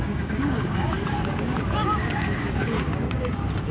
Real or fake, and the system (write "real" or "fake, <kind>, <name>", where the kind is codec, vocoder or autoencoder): fake, codec, DAC